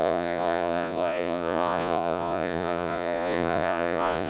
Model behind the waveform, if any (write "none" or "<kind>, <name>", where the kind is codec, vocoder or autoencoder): vocoder, Vocos